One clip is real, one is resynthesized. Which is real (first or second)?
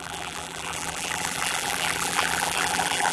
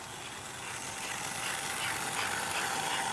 second